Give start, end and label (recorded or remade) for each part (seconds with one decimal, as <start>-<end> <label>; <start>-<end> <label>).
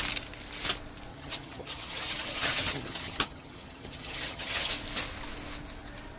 0.0-1.1 recorded; 1.1-4.7 remade; 4.7-6.2 recorded